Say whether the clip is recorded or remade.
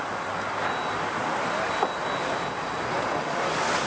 recorded